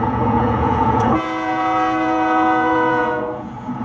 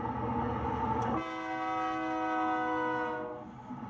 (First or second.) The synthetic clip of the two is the first